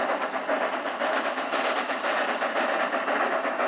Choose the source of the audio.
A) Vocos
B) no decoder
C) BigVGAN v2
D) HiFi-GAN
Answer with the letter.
B